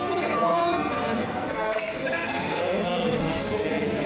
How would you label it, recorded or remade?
remade